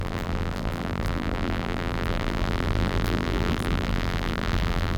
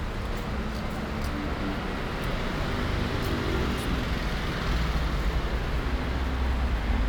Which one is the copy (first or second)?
first